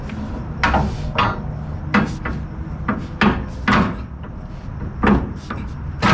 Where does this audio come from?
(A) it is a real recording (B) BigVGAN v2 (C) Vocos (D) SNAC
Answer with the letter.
A